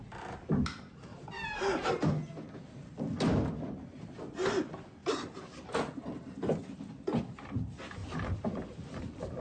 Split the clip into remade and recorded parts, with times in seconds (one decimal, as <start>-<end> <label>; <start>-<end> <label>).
0.0-1.1 recorded; 1.1-1.9 remade; 1.9-5.0 recorded; 5.0-5.9 remade; 5.9-9.4 recorded